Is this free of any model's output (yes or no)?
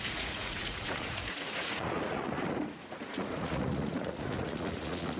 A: no